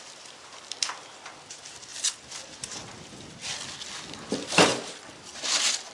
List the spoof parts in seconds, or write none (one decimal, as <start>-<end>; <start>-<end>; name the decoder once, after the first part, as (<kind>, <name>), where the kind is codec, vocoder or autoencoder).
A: 0.0-3.4 (vocoder, BigVGAN v2); 4.3-5.9